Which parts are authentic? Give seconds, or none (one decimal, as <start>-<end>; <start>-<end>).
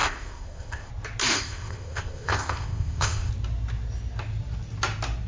0.9-1.3; 3.3-5.3